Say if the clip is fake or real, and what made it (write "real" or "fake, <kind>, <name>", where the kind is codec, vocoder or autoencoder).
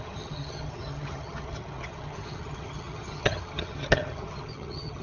fake, vocoder, HiFi-GAN